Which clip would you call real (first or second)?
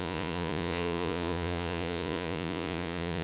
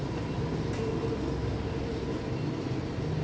second